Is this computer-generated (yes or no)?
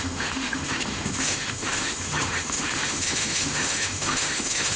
yes